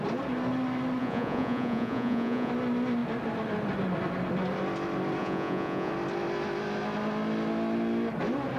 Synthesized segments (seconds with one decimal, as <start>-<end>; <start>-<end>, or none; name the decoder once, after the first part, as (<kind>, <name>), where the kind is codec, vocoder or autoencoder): 1.0-2.5 (vocoder, Vocos); 5.2-5.9